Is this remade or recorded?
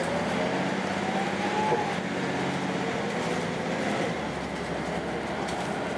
recorded